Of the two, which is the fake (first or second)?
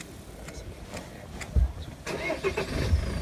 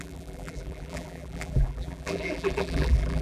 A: second